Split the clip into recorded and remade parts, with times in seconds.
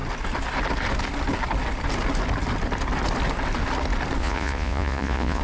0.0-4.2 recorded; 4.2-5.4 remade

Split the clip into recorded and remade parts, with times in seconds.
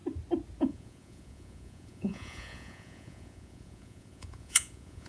0.0-0.6 recorded; 0.6-5.1 remade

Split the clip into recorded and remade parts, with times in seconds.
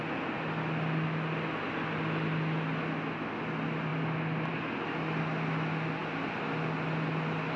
0.0-7.6 recorded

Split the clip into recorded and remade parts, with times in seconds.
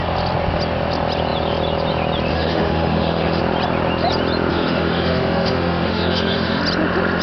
0.0-2.3 recorded; 2.3-3.4 remade; 3.4-4.5 recorded; 4.5-6.6 remade; 6.6-7.2 recorded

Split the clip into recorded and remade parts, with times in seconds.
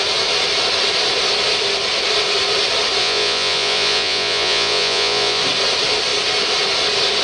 0.0-3.0 recorded; 3.0-5.4 remade; 5.4-7.2 recorded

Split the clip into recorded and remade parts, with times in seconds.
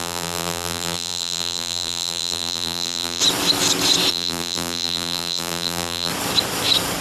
0.0-3.2 remade; 3.2-4.1 recorded; 4.1-6.1 remade; 6.1-7.0 recorded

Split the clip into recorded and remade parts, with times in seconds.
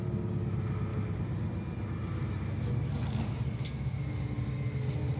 0.0-5.2 recorded